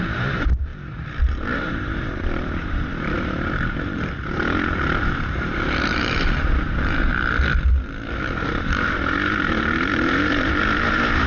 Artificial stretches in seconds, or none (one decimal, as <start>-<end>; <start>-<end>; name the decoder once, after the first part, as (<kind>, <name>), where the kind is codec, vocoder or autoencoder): 0.0-7.1 (vocoder, BigVGAN v2); 8.4-11.3